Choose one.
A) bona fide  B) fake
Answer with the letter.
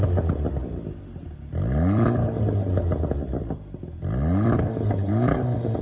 A